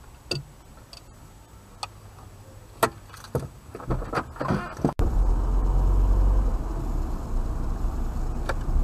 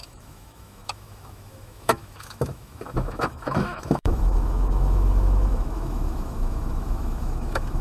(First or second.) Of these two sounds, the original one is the first